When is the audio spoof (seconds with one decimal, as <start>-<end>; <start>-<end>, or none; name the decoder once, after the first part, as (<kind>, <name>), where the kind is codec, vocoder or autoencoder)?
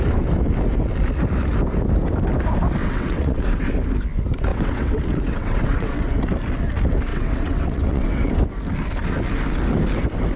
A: 2.8-3.7 (vocoder, WaveNeXt); 4.5-6.1; 7.1-8.3